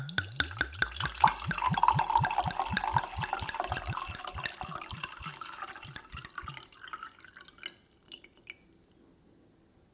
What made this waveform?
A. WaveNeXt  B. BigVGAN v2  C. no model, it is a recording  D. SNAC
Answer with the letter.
C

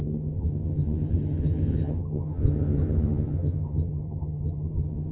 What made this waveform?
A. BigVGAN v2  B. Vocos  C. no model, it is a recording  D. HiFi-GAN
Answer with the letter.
D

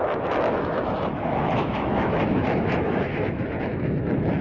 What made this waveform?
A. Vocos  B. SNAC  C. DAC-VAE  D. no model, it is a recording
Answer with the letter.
C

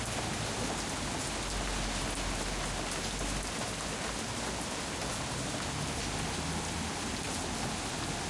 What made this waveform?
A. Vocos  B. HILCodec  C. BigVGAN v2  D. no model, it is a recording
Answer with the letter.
D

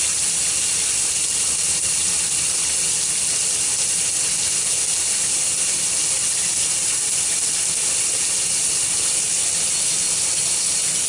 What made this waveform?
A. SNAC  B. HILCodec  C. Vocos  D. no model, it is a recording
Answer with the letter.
D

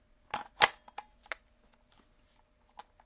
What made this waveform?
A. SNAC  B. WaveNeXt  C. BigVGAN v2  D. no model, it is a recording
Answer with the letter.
D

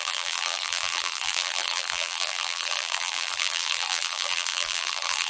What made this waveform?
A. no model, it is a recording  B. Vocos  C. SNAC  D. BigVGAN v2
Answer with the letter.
D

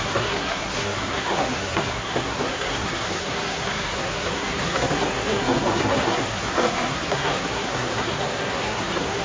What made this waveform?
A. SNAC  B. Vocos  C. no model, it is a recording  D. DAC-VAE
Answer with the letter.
A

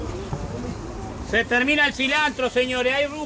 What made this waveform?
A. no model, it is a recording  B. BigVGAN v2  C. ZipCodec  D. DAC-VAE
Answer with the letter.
A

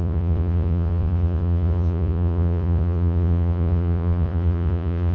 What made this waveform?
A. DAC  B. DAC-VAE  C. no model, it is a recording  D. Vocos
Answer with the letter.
D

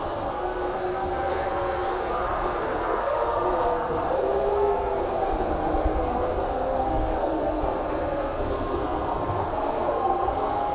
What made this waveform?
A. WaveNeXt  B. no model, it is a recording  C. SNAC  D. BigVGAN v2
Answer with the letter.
C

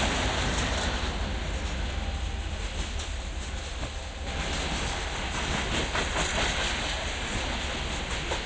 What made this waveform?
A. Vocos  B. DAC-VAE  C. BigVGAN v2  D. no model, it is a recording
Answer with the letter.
D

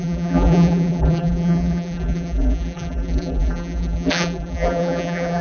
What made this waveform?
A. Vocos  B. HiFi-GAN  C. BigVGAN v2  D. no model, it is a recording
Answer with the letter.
C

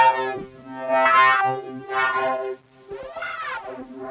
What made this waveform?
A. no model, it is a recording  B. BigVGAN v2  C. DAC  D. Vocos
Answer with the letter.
A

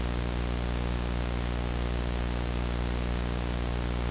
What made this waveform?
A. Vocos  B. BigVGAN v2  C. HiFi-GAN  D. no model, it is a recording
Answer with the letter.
D